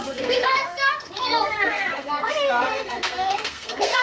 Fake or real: fake